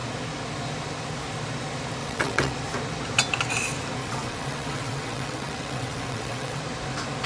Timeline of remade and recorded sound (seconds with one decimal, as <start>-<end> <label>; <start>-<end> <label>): 0.0-2.0 recorded; 2.0-2.5 remade; 2.5-4.0 recorded; 4.0-6.6 remade; 6.6-7.3 recorded